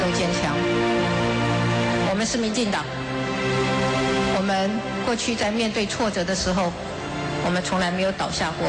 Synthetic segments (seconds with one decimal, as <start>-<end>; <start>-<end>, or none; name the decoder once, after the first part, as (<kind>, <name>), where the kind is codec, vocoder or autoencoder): none